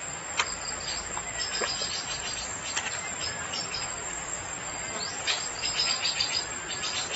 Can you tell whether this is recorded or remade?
recorded